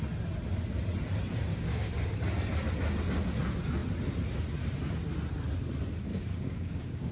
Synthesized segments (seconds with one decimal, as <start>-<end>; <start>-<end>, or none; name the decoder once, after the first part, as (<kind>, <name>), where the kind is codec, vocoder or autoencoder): 1.5-2.2 (codec, DAC); 6.1-7.1